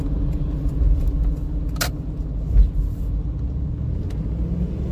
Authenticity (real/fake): real